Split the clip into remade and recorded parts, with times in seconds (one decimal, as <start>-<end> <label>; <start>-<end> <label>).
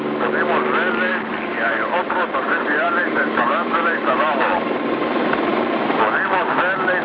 0.0-1.1 recorded; 1.1-4.8 remade; 4.8-7.0 recorded